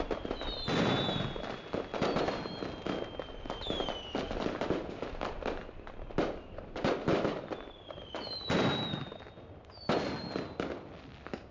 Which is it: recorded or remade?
recorded